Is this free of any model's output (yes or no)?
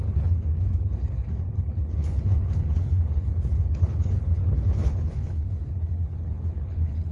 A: no